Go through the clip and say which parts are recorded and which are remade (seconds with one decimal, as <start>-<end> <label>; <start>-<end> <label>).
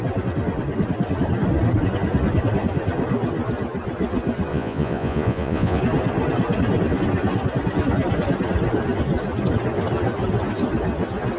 0.0-4.5 recorded; 4.5-5.8 remade; 5.8-11.4 recorded